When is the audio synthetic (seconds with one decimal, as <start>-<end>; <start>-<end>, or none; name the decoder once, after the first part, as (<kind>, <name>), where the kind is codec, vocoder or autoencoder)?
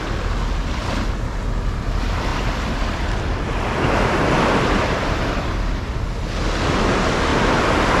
2.3-5.9 (vocoder, BigVGAN v2); 7.3-8.0